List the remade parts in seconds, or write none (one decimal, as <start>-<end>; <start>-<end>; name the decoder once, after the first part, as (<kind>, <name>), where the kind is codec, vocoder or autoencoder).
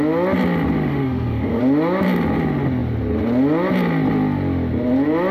0.9-1.6 (autoencoder, DAC-VAE)